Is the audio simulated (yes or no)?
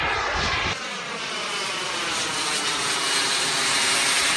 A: no